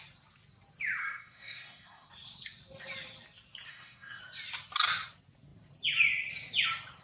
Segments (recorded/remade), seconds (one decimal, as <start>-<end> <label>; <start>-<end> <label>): 0.0-1.0 recorded; 1.0-2.1 remade; 2.1-3.7 recorded; 3.7-4.2 remade; 4.2-7.0 recorded